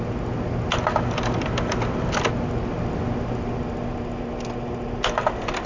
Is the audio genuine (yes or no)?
yes